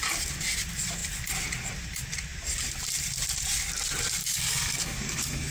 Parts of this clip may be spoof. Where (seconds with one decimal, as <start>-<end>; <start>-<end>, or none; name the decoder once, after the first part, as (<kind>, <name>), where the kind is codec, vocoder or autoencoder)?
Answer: 4.2-5.5 (codec, DAC)